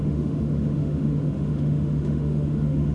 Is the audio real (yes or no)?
no